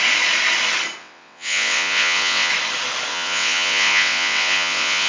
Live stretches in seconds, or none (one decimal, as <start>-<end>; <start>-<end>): 0.0-1.0; 2.5-3.1

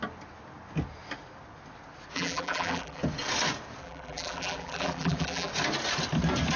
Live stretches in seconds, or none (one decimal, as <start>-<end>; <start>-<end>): 0.0-2.1; 3.0-3.8; 5.5-6.6

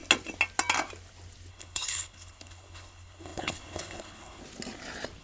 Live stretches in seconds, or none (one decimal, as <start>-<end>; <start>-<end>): 0.0-1.5; 4.4-5.2

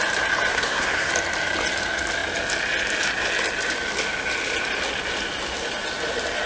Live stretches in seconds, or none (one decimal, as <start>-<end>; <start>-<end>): 0.0-0.5; 1.1-6.5

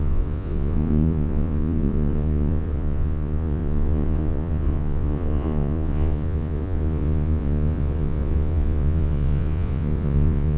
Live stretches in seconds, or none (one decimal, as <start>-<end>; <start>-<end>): none

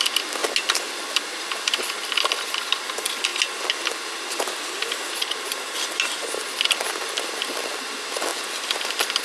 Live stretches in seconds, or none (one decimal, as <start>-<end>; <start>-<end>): 0.0-9.2

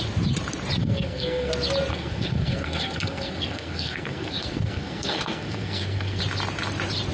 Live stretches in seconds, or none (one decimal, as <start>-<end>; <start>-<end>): 0.0-0.8; 1.5-1.9; 6.2-7.1

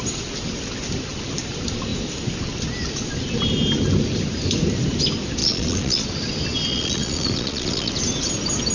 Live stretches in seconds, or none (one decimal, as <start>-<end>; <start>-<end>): 0.0-5.4; 6.0-6.7; 7.9-8.7